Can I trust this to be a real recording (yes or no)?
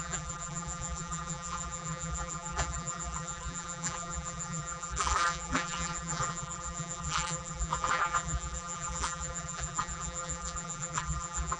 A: no